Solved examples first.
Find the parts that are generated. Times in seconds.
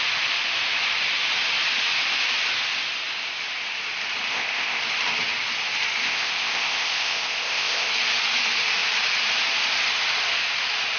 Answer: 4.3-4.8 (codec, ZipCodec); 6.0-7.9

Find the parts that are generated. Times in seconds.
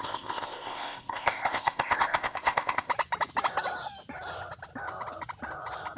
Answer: 0.0-2.9 (codec, ZipCodec)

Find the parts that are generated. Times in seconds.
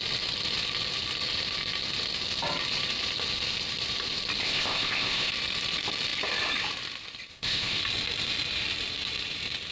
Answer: 4.4-5.3 (codec, ZipCodec); 7.3-7.8